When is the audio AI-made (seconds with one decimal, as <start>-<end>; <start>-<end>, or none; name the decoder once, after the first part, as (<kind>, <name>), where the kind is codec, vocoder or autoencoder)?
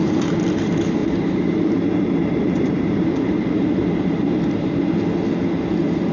1.0-4.7 (vocoder, BigVGAN v2)